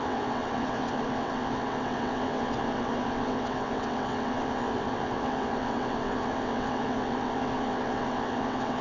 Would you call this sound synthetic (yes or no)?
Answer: yes